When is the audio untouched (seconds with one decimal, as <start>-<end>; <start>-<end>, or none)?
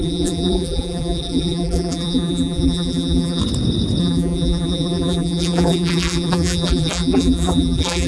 3.4-4.0